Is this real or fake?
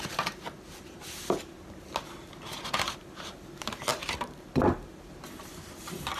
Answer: real